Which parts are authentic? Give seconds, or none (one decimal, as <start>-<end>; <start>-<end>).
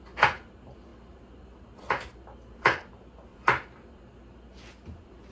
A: 0.0-3.3; 4.0-5.3